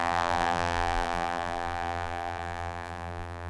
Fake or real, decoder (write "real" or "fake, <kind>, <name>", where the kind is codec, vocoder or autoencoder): fake, vocoder, BigVGAN v2